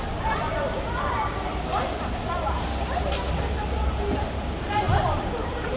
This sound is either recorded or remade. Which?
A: recorded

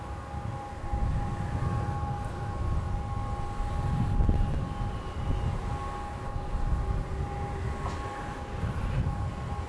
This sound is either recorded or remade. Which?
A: recorded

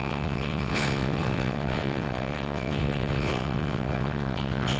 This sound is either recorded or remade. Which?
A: remade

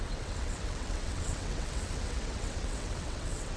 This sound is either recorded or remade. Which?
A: remade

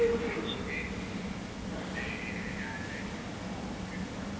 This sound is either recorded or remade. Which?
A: recorded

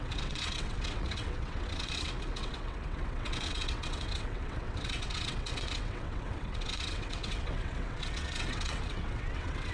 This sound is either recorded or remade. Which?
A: remade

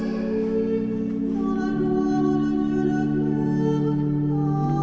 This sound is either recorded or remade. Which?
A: recorded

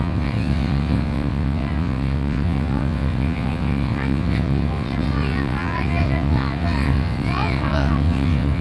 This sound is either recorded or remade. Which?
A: remade